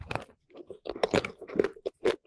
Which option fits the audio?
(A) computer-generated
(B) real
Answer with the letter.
A